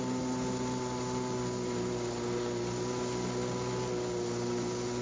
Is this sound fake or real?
real